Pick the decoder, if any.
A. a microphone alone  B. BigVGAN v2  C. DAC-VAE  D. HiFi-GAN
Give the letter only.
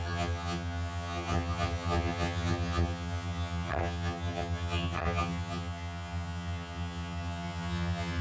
D